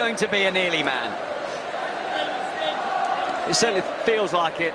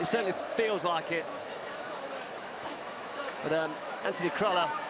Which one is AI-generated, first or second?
second